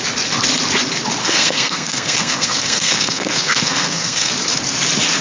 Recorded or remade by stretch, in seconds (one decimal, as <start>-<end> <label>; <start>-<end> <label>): 0.0-1.2 recorded; 1.2-4.3 remade; 4.3-5.2 recorded